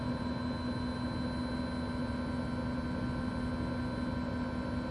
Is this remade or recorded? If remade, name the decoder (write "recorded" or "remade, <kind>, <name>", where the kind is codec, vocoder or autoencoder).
recorded